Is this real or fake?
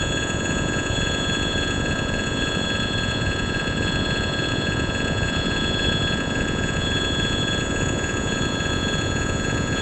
fake